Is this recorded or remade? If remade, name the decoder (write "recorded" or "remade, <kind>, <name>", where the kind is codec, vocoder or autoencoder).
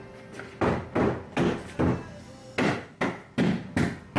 recorded